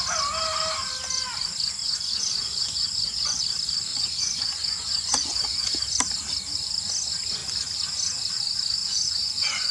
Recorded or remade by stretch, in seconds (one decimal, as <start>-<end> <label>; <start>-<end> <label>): 0.0-1.8 recorded; 1.8-3.4 remade; 3.4-3.9 recorded; 3.9-5.8 remade; 5.8-8.8 recorded; 8.8-9.7 remade